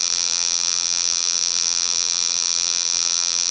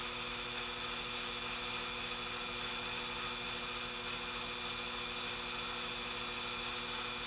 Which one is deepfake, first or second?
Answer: first